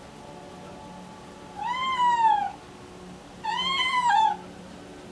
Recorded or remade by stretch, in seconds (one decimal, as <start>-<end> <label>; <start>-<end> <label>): 0.0-3.5 recorded; 3.5-4.1 remade; 4.1-5.1 recorded